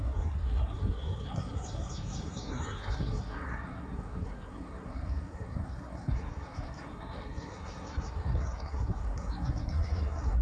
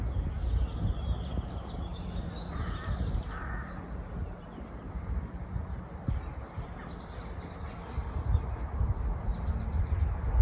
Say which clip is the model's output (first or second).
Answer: first